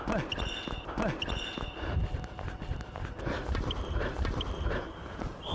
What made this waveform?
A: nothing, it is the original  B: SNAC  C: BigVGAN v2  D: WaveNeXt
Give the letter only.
A